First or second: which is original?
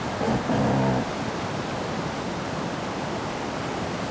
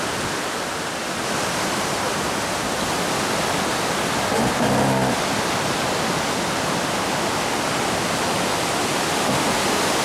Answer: second